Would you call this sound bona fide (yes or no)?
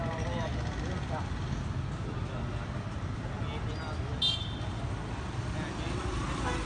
yes